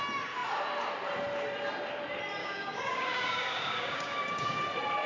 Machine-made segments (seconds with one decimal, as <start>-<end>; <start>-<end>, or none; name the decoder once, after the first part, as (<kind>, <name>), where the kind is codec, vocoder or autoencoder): 2.4-4.6 (codec, DAC)